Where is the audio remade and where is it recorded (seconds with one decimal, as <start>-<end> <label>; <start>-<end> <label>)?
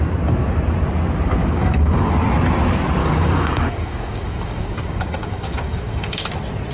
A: 0.0-1.4 recorded; 1.4-2.1 remade; 2.1-3.0 recorded; 3.0-6.3 remade; 6.3-6.7 recorded